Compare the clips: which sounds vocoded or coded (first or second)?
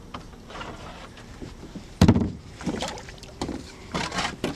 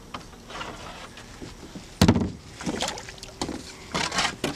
first